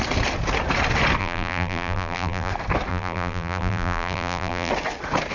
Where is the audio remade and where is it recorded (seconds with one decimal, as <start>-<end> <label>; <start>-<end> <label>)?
0.0-1.2 recorded; 1.2-2.5 remade; 2.5-2.9 recorded; 2.9-4.7 remade; 4.7-5.3 recorded